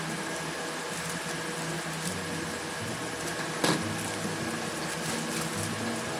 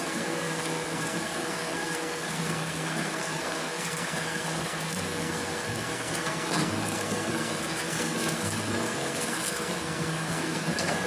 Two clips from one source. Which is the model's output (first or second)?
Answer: second